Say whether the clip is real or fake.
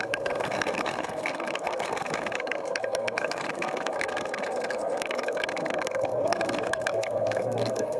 fake